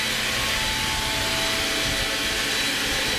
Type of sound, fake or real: real